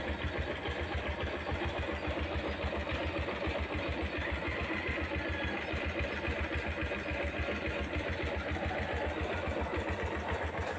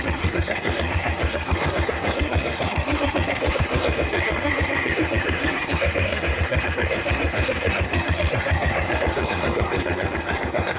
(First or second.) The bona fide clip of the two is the first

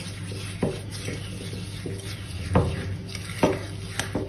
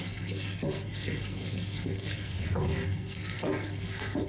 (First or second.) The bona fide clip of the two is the first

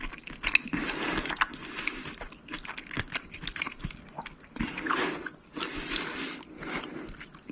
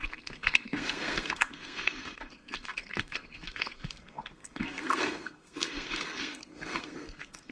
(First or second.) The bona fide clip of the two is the first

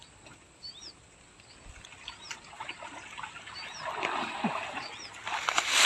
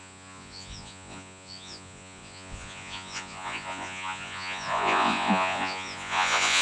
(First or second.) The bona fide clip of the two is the first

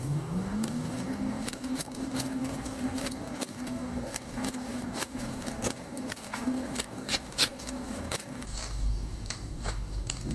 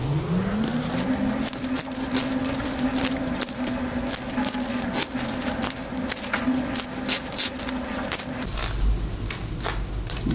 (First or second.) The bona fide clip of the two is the second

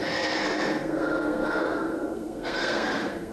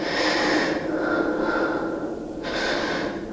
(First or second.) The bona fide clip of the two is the second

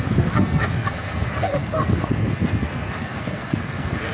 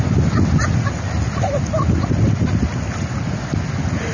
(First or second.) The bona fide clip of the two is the second